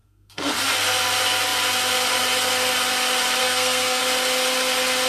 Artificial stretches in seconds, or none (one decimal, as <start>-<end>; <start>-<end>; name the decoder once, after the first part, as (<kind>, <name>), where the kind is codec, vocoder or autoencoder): 0.0-0.5 (codec, SNAC); 3.4-4.0